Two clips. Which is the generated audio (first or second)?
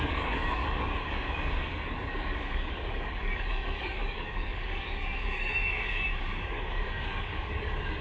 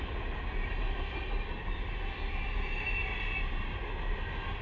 first